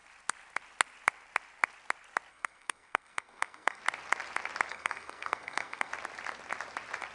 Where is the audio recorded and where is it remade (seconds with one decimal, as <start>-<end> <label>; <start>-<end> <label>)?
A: 0.0-2.3 recorded; 2.3-3.8 remade; 3.8-4.7 recorded; 4.7-5.9 remade; 5.9-7.1 recorded